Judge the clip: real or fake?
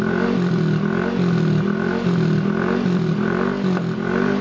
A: real